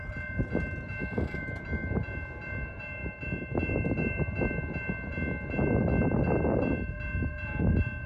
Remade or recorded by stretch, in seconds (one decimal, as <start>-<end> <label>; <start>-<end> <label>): 0.0-1.0 recorded; 1.0-1.6 remade; 1.6-8.1 recorded